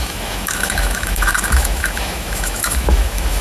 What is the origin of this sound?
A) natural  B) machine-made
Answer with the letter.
B